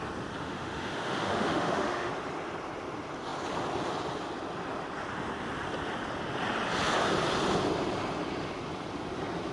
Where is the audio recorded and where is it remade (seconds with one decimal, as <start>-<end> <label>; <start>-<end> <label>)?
0.0-0.4 recorded; 0.4-2.1 remade; 2.1-9.5 recorded